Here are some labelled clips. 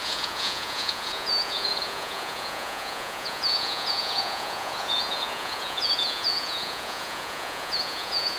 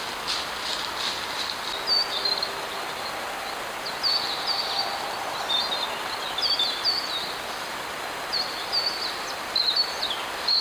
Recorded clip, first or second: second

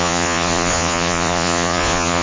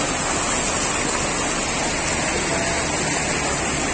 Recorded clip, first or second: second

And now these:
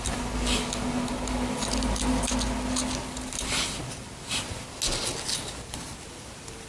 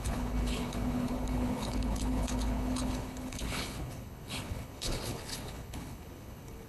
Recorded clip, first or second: first